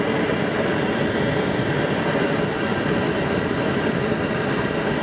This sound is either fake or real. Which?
real